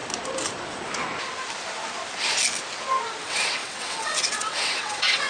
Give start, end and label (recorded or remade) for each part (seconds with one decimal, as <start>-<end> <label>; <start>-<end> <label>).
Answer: 0.0-3.2 recorded; 3.2-5.3 remade